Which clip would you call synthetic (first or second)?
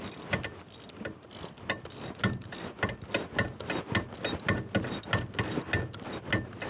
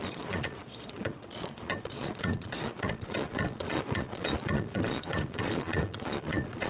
second